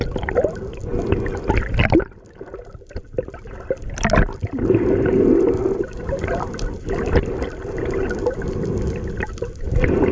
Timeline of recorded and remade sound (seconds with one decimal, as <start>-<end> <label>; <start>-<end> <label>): 0.0-10.1 recorded